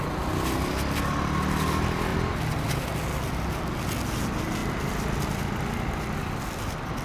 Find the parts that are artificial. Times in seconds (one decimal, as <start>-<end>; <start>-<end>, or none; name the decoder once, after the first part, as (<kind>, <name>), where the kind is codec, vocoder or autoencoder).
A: none